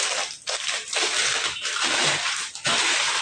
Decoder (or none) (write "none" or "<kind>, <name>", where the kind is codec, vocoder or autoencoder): vocoder, BigVGAN v2